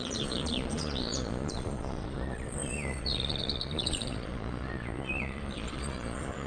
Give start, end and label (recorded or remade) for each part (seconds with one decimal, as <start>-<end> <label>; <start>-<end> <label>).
0.0-6.5 remade